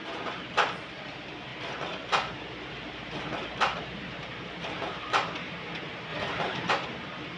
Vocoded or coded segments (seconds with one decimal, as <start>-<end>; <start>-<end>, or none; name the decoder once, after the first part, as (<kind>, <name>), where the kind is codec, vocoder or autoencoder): 0.0-7.4 (vocoder, BigVGAN v2)